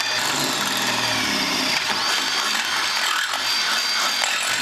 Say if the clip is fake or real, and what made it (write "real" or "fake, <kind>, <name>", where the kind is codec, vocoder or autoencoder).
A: real